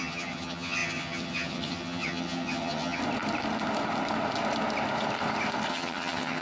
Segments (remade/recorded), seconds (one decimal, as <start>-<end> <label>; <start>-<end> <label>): 0.0-3.0 remade; 3.0-5.7 recorded; 5.7-6.4 remade